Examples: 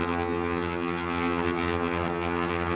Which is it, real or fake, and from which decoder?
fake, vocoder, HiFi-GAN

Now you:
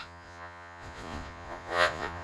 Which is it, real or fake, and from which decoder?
fake, vocoder, Vocos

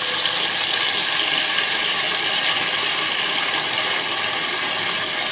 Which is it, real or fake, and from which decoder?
real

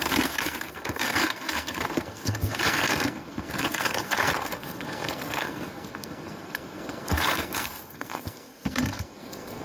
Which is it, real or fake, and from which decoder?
fake, codec, SNAC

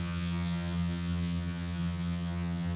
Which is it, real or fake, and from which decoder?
fake, vocoder, HiFi-GAN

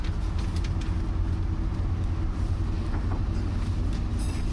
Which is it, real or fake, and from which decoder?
real